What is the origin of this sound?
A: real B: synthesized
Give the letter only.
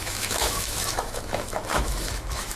B